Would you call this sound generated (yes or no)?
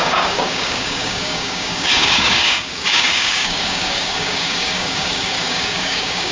yes